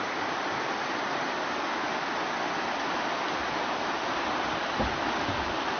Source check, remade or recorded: recorded